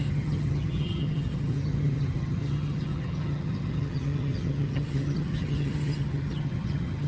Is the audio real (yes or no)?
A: no